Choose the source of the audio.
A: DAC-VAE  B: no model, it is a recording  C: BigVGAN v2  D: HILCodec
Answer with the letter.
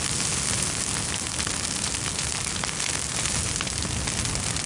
B